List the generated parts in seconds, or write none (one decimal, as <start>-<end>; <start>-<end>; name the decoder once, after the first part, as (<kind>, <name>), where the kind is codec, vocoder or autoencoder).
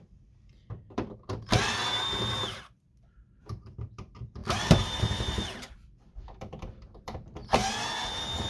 0.0-7.4 (vocoder, BigVGAN v2)